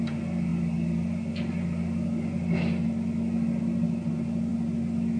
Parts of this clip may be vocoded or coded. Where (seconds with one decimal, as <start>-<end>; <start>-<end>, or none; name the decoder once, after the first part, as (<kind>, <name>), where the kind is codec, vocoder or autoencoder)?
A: none